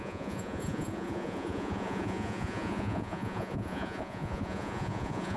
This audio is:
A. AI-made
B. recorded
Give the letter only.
A